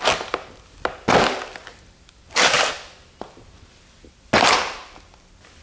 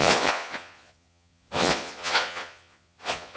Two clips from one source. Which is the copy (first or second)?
second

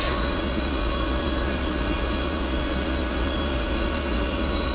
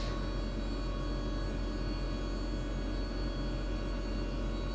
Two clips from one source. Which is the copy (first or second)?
first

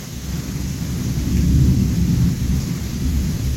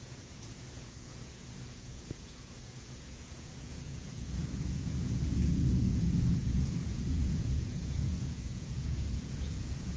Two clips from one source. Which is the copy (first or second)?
second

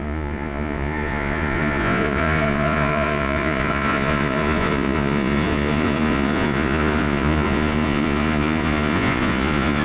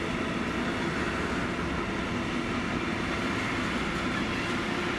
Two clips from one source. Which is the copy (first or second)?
first